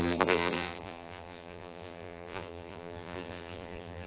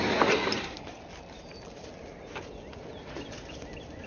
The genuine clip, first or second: second